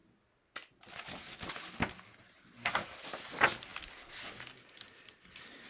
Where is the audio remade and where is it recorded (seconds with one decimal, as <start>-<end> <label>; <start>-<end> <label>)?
0.0-5.7 recorded